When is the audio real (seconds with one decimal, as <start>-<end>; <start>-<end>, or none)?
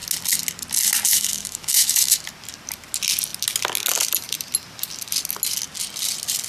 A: 0.0-1.1; 2.2-6.5